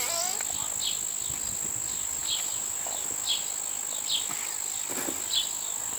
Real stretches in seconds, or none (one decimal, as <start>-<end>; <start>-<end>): 0.0-6.0